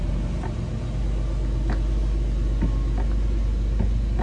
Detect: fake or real real